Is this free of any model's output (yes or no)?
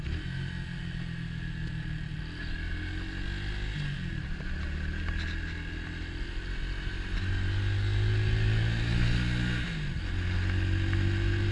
yes